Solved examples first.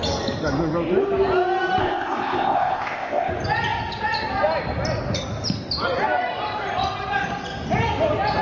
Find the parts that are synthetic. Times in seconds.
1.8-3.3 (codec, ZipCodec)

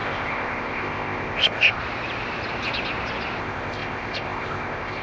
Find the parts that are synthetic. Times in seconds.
0.0-1.8 (codec, ZipCodec); 3.4-5.0

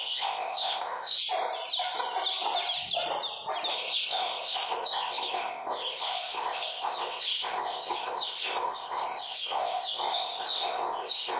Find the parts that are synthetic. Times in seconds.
0.0-1.2 (codec, ZipCodec); 3.7-11.4

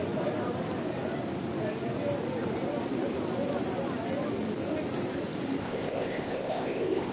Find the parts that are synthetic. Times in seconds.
5.6-7.1 (codec, ZipCodec)